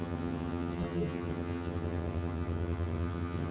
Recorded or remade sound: remade